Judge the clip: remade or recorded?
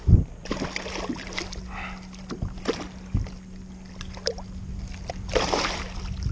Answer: recorded